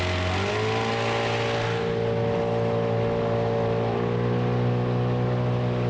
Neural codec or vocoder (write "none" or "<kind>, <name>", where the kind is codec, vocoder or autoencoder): none